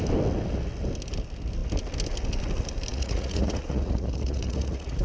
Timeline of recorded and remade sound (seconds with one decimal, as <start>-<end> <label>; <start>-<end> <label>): 0.0-2.9 recorded; 2.9-5.0 remade